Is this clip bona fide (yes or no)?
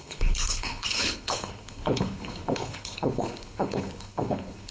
no